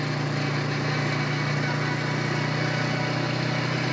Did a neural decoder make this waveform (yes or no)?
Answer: no